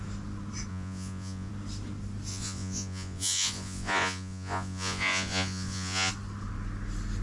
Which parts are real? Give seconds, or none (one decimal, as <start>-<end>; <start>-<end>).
0.0-0.7; 1.5-2.3; 6.1-7.2